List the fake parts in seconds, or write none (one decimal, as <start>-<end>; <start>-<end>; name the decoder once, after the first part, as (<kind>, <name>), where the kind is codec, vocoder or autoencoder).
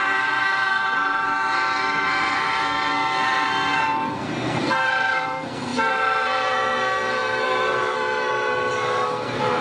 0.0-9.6 (codec, SNAC)